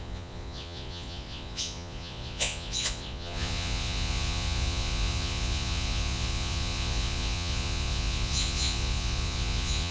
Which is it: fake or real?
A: fake